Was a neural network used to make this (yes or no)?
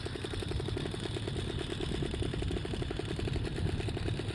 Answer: no